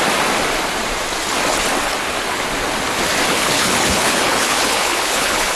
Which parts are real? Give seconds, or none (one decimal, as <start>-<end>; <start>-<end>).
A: 0.0-3.3